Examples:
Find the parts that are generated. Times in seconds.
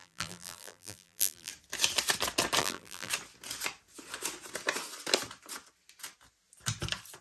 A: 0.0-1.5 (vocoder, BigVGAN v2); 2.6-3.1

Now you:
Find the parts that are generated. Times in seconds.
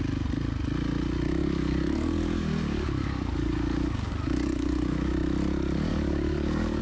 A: 1.4-5.1 (codec, DAC); 5.9-6.8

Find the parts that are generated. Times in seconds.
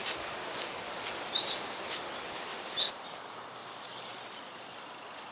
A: 2.5-3.2 (vocoder, BigVGAN v2)